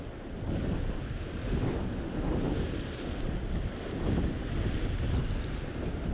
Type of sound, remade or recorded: recorded